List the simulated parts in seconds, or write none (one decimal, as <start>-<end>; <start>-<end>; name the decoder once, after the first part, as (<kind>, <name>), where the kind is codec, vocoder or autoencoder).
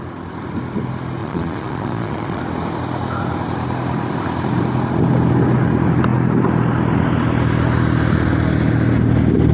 1.2-2.4 (vocoder, Vocos)